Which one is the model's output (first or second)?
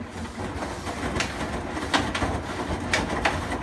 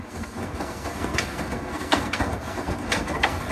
second